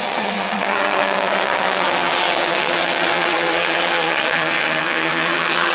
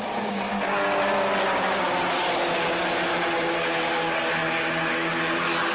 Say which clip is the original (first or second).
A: second